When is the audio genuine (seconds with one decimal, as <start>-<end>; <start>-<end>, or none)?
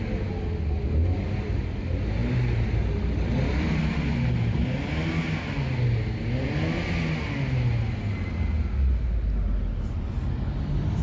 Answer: 0.0-11.0